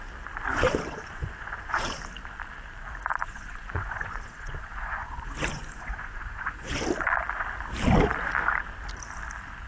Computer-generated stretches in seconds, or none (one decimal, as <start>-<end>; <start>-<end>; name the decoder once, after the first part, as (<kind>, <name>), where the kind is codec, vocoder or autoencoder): 0.5-2.0 (vocoder, Vocos); 3.1-6.8